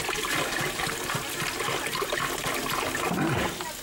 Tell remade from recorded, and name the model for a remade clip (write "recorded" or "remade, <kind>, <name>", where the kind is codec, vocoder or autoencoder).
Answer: recorded